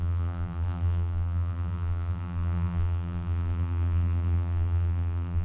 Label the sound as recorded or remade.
remade